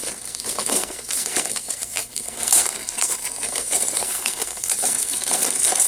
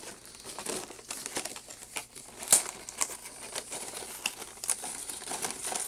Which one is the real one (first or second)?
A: second